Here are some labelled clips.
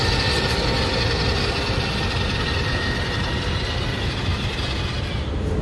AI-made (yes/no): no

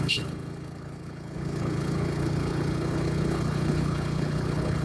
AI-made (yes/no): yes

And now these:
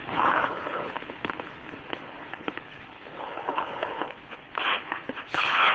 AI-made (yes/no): yes